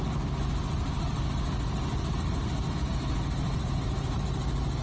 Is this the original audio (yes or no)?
yes